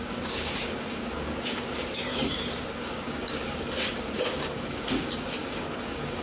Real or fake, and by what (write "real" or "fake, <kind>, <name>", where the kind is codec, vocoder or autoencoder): fake, codec, DAC